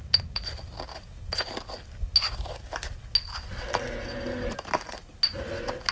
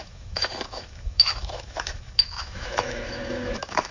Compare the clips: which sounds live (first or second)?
first